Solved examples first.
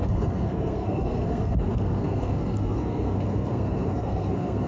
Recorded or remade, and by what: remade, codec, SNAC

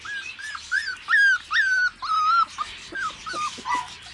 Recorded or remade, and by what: recorded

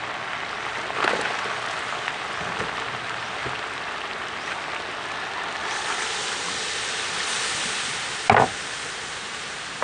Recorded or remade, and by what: recorded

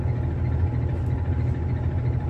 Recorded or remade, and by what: recorded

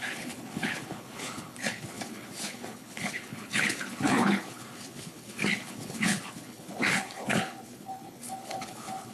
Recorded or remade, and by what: remade, codec, HILCodec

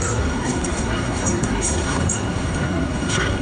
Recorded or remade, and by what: remade, codec, SNAC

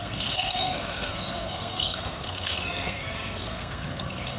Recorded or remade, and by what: remade, codec, SNAC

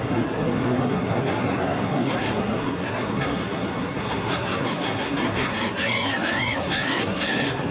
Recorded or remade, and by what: remade, codec, SNAC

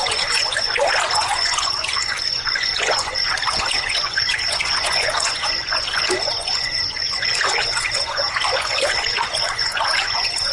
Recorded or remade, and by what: remade, vocoder, Vocos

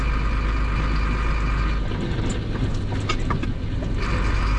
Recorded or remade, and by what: recorded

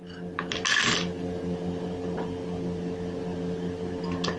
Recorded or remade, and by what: recorded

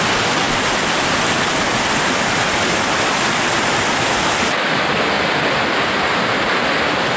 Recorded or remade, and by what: recorded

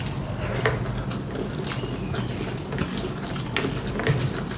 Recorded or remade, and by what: recorded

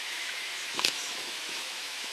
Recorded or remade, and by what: remade, autoencoder, DAC-VAE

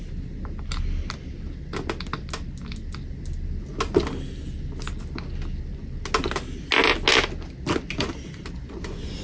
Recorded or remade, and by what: recorded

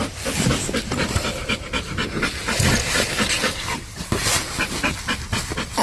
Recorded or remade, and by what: recorded